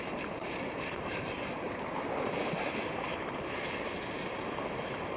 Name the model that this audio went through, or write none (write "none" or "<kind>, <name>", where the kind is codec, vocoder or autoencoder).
vocoder, BigVGAN v2